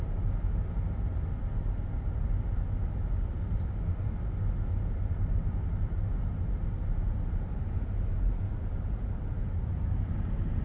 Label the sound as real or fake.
real